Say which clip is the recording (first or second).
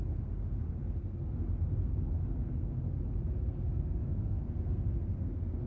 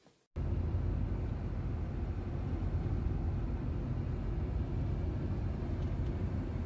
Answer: second